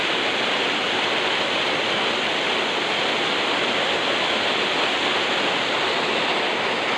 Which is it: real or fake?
real